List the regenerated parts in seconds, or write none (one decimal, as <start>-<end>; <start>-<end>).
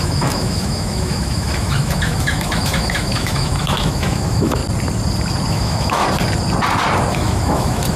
0.0-4.6; 5.5-6.0; 7.1-8.0